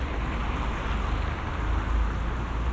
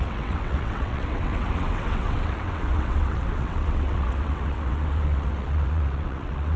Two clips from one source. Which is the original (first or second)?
first